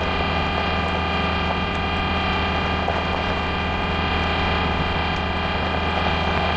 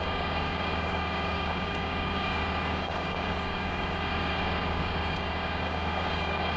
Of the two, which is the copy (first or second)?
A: second